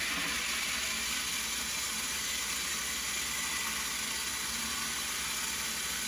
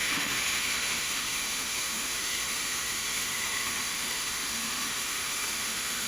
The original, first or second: first